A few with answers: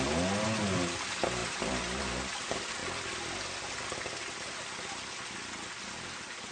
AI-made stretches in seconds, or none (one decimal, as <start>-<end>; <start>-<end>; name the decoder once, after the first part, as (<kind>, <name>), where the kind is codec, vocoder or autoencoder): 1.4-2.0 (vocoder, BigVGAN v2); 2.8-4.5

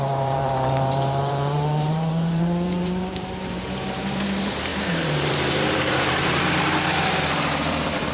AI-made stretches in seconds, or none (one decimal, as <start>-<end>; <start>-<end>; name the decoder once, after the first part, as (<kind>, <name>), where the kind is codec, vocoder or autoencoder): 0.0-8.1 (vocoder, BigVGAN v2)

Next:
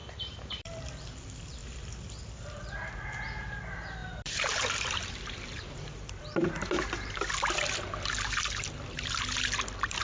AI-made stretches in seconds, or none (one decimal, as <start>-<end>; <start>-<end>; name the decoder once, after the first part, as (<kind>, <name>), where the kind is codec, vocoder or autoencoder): 0.0-0.8 (vocoder, BigVGAN v2); 1.6-2.9; 4.0-8.4